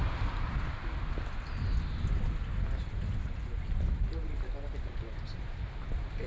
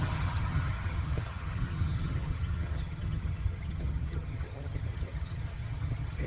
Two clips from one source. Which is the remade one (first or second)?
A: second